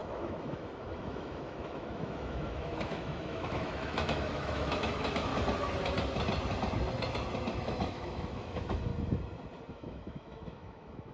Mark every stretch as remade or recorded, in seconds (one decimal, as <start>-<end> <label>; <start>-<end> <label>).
0.0-5.3 remade; 5.3-7.6 recorded; 7.6-8.9 remade; 8.9-9.7 recorded; 9.7-11.1 remade